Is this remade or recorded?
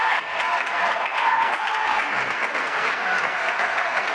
remade